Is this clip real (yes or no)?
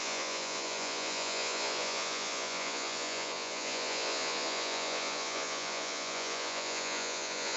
no